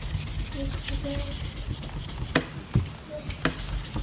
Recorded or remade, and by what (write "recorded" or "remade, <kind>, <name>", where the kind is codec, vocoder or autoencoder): recorded